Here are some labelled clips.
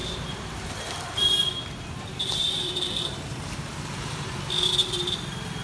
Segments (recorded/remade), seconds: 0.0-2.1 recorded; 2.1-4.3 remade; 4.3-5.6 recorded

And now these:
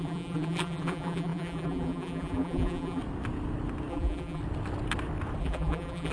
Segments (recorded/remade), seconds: 0.0-3.0 remade; 3.0-3.9 recorded; 3.9-4.4 remade; 4.4-5.4 recorded; 5.4-6.1 remade

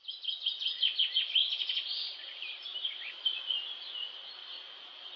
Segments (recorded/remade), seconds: 0.0-1.4 recorded; 1.4-3.1 remade; 3.1-5.2 recorded

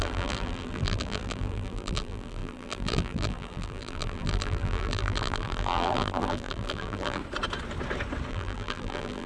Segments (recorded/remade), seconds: 0.0-7.2 remade; 7.2-8.3 recorded; 8.3-9.3 remade